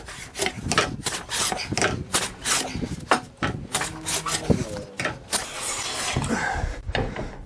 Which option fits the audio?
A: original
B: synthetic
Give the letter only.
A